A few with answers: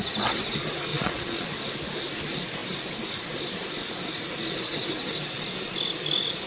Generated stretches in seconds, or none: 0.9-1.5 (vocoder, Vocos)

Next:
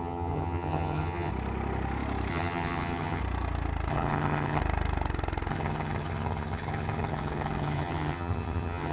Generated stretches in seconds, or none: 0.0-1.3 (vocoder, HiFi-GAN); 2.3-3.2; 3.9-4.6; 5.5-8.9

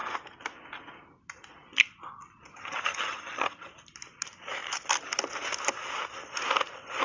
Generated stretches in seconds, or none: 2.5-3.7 (vocoder, HiFi-GAN)

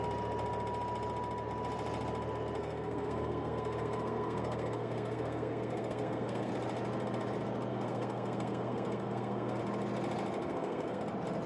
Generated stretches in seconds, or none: 2.6-6.5 (codec, SNAC); 7.7-9.6; 10.4-11.0

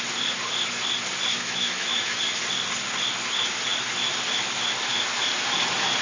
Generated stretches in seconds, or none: 1.3-2.2 (autoencoder, DAC-VAE)

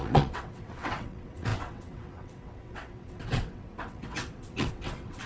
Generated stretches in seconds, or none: 0.0-5.3 (vocoder, WaveNeXt)

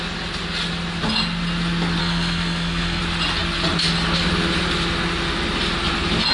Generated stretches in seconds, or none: 2.0-3.0 (codec, SNAC)

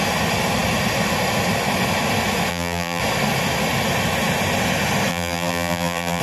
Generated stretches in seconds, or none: 2.5-3.0 (vocoder, BigVGAN v2); 5.1-6.2